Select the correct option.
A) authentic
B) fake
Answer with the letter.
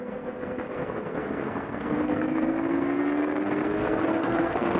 B